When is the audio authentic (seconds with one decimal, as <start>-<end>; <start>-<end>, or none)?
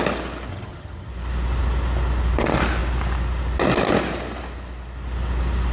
0.0-0.5; 1.1-5.7